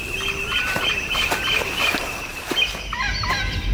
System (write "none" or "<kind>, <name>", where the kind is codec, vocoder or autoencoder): none